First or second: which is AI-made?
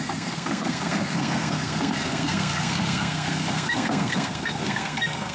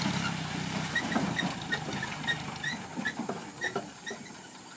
first